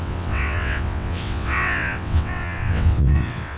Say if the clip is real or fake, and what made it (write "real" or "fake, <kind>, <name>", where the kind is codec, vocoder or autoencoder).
fake, vocoder, WaveNeXt